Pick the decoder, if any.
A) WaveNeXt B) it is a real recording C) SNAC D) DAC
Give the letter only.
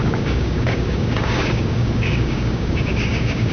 D